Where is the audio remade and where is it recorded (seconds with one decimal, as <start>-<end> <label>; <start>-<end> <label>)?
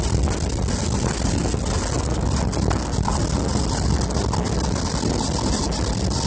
0.0-6.3 recorded